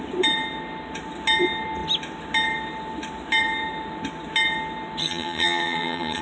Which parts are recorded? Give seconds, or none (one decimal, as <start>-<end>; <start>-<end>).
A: 0.0-5.0